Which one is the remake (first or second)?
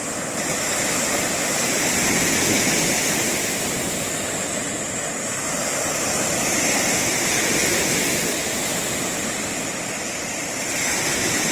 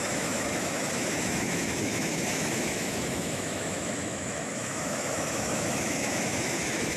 second